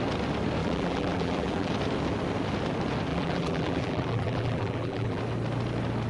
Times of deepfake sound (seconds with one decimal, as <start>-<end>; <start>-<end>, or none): 0.6-1.7; 3.1-5.2